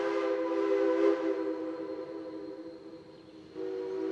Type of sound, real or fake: real